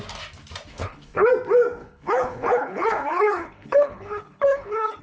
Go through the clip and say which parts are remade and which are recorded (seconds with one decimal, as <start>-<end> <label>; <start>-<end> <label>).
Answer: 0.0-0.7 recorded; 0.7-1.3 remade; 1.3-1.8 recorded; 1.8-5.0 remade